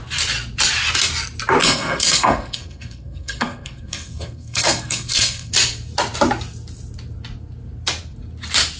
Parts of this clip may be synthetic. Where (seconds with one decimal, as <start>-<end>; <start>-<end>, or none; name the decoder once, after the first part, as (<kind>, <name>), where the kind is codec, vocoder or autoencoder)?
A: 1.6-5.5 (codec, SNAC)